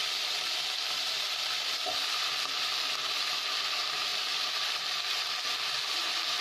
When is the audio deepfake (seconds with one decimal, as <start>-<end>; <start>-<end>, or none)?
0.0-3.0; 4.1-5.1